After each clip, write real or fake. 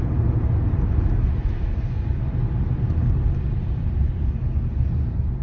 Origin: real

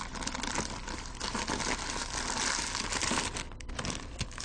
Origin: real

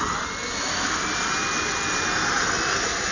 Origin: real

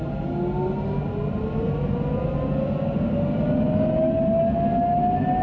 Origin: real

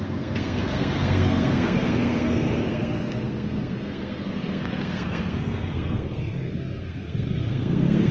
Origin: fake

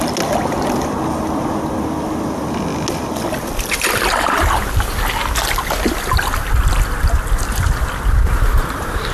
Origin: real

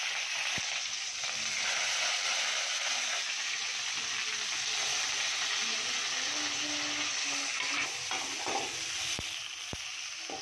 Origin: real